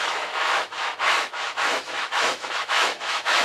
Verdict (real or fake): fake